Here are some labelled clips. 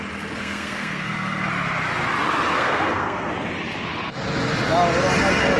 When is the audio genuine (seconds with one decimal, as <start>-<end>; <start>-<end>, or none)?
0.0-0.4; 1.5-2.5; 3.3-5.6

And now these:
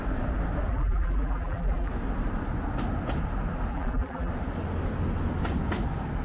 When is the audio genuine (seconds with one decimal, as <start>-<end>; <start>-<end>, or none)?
0.0-0.7; 1.9-3.7; 4.3-6.2

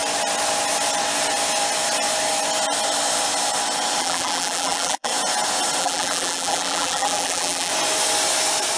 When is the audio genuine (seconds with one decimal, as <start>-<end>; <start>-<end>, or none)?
0.0-4.0; 5.1-5.8; 7.7-8.8